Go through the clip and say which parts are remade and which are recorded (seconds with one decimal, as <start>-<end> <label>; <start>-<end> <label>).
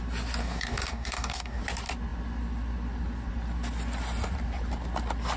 0.0-0.4 recorded; 0.4-1.6 remade; 1.6-5.4 recorded